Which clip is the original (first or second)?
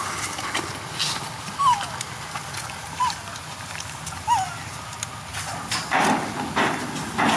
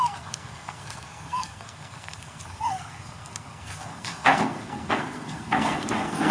first